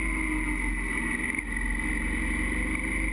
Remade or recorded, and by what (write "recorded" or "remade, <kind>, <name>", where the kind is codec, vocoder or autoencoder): recorded